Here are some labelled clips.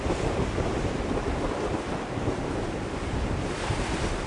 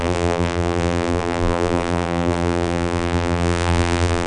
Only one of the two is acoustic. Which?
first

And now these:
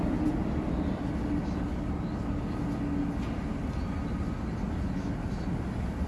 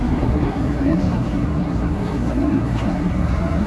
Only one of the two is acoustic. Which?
first